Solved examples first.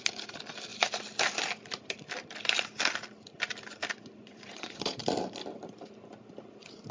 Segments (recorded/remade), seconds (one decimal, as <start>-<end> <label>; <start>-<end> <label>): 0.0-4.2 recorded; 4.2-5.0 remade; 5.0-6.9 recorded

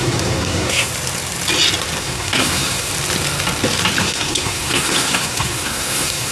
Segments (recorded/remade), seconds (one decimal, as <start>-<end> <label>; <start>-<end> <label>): 0.0-0.9 remade; 0.9-2.0 recorded; 2.0-2.9 remade; 2.9-4.0 recorded; 4.0-6.3 remade

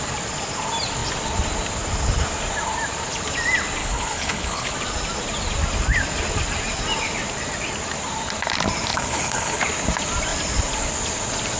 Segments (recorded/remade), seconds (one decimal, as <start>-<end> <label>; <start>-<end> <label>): 0.0-3.8 recorded; 3.8-4.7 remade; 4.7-8.9 recorded; 8.9-9.6 remade; 9.6-11.6 recorded